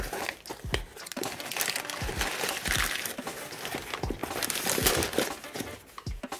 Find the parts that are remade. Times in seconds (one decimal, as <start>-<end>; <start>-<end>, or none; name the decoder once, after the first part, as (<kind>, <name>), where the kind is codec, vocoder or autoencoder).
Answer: none